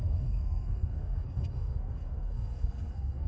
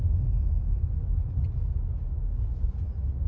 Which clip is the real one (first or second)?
second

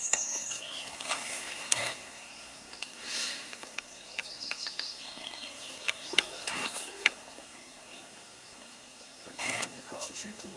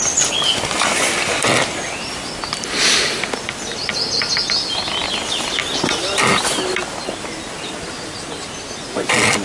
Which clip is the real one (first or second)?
second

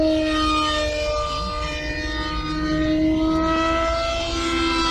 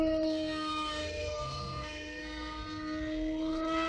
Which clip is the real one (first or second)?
first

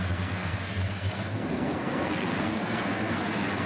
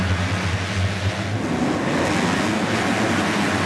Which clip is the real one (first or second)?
second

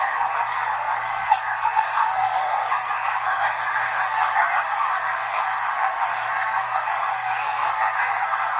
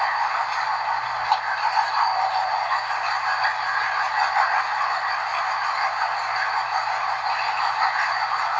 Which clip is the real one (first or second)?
second